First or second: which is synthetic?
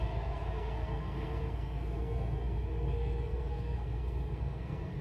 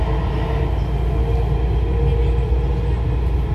first